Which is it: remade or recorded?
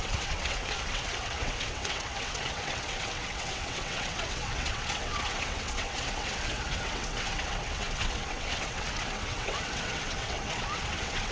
remade